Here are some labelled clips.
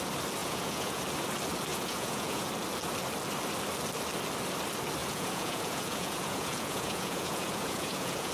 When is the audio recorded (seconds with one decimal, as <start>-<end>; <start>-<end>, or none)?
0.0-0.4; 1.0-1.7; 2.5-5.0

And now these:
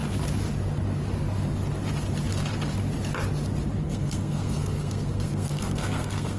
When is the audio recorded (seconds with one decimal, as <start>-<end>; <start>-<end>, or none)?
0.0-3.8

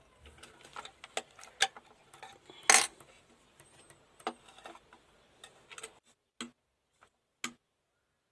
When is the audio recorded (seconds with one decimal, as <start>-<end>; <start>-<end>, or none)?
0.0-8.3

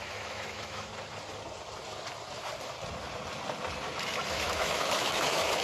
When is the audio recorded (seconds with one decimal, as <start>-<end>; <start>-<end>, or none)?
0.9-4.3